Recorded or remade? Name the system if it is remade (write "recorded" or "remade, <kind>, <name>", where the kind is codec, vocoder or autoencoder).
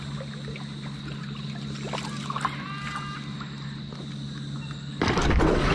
recorded